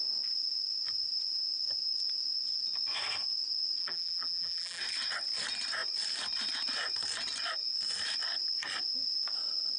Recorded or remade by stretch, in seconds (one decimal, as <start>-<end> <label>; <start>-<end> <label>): 0.0-3.8 recorded; 3.8-4.8 remade; 4.8-9.8 recorded